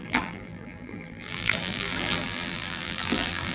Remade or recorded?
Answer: remade